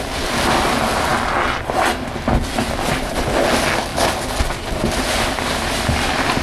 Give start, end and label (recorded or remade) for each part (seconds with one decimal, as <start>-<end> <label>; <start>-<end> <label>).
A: 0.0-6.4 recorded